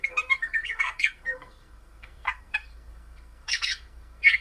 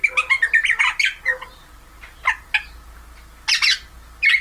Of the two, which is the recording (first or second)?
second